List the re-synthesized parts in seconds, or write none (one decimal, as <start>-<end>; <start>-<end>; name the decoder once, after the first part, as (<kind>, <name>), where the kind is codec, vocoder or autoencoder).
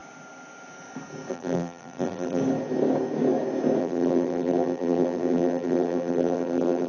1.3-2.4 (vocoder, BigVGAN v2); 3.8-6.9